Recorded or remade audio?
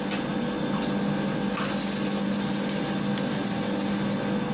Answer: recorded